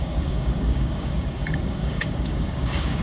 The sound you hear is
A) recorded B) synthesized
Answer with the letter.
B